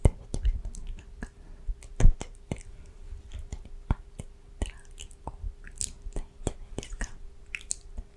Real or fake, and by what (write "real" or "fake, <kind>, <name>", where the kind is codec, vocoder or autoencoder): real